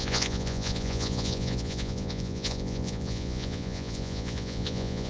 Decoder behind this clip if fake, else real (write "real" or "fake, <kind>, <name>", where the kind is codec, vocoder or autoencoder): fake, vocoder, Vocos